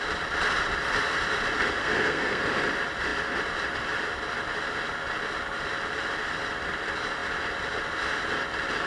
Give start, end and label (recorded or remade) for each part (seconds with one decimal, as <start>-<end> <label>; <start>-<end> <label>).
0.0-1.8 recorded; 1.8-2.4 remade; 2.4-8.9 recorded